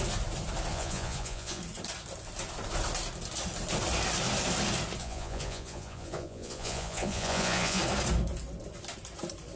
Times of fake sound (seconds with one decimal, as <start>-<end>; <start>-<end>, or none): 0.7-1.6; 5.0-7.8